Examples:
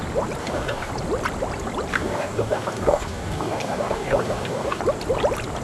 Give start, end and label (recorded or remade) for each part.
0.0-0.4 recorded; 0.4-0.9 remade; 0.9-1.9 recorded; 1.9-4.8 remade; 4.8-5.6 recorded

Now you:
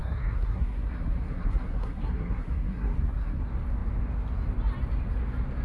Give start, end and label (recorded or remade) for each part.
0.0-3.4 remade; 3.4-5.6 recorded

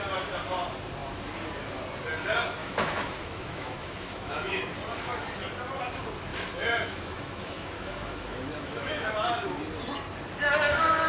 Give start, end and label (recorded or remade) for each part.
0.0-2.6 recorded; 2.6-4.6 remade; 4.6-6.3 recorded; 6.3-9.1 remade; 9.1-11.1 recorded

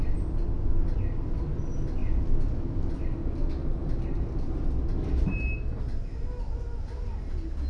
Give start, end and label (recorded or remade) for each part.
0.0-7.7 recorded

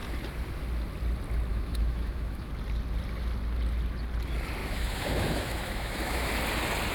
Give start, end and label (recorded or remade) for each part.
0.0-1.5 recorded; 1.5-2.5 remade; 2.5-4.6 recorded; 4.6-6.3 remade; 6.3-6.9 recorded

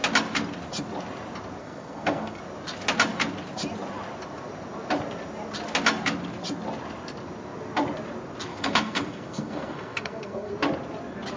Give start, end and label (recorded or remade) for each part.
0.0-1.6 recorded; 1.6-2.4 remade; 2.4-8.5 recorded; 8.5-10.5 remade; 10.5-11.4 recorded